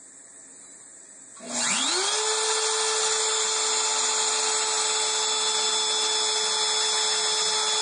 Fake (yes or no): no